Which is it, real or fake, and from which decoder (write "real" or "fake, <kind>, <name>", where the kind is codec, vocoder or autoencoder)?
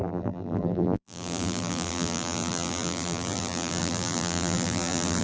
fake, vocoder, BigVGAN v2